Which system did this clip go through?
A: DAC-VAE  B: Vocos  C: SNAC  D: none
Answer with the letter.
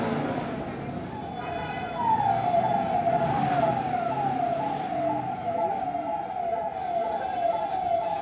D